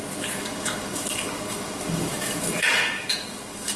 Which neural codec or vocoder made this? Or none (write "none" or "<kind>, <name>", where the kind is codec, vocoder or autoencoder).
autoencoder, DAC-VAE